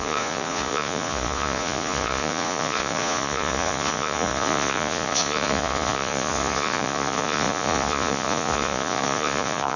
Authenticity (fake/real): fake